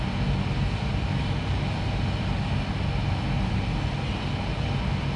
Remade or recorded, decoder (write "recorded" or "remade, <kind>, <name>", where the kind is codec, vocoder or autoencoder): recorded